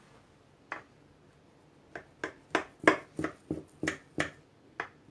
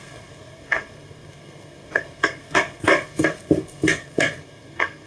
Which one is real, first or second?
first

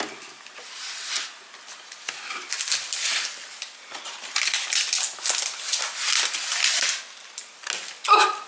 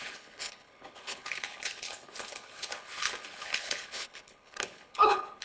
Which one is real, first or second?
first